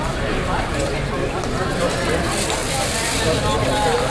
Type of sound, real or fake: real